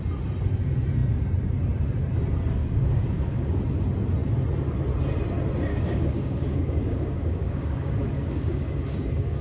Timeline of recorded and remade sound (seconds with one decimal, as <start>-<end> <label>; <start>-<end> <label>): 0.0-2.6 recorded; 2.6-3.6 remade; 3.6-5.7 recorded; 5.7-9.4 remade